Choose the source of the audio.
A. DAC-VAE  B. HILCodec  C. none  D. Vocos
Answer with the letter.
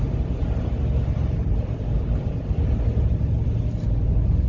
C